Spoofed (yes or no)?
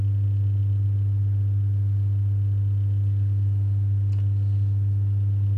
no